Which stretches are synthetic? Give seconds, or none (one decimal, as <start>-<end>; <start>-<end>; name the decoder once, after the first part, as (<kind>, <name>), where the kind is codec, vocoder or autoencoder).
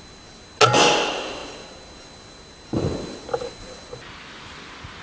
none